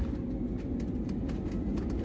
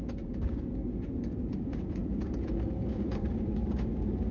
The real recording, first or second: first